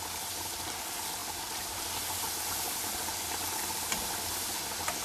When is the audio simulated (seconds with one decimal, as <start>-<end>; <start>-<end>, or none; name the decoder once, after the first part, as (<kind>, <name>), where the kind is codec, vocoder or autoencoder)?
none